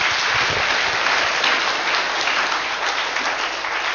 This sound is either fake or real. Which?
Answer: real